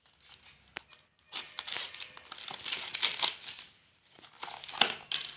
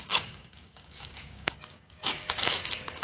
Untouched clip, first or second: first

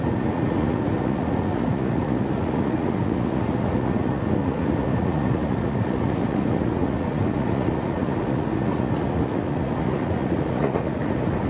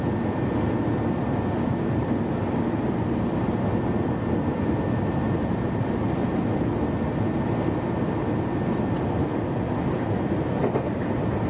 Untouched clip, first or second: second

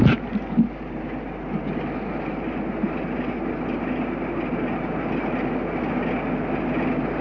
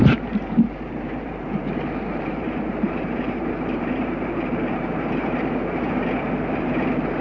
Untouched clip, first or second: first